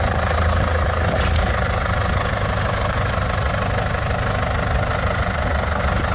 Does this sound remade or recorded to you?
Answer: recorded